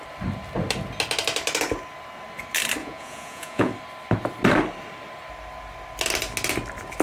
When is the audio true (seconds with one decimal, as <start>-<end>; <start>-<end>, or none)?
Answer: 0.0-2.8; 3.7-7.0